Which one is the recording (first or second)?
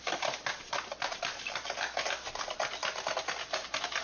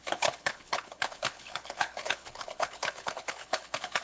first